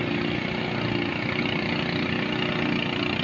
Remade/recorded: recorded